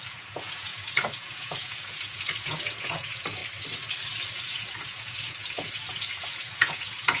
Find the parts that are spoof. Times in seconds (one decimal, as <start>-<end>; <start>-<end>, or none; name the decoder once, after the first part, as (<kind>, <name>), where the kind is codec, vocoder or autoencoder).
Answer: 0.0-3.4 (vocoder, Vocos); 4.3-7.2

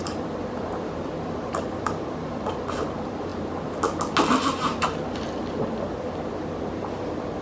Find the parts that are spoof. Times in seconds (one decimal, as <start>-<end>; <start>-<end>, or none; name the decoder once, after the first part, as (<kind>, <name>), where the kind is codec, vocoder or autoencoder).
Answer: 0.0-3.3 (vocoder, BigVGAN v2); 6.6-7.4